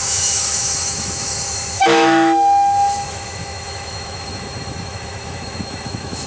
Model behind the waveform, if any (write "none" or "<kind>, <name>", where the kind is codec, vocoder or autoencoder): autoencoder, DAC-VAE